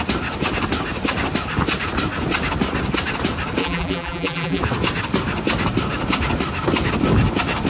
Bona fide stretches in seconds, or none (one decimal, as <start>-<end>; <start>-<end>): 0.0-3.6; 4.6-7.7